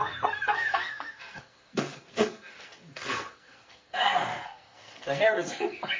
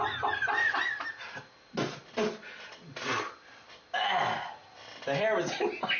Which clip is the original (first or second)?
second